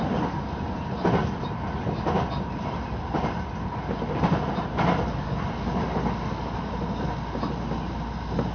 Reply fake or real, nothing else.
real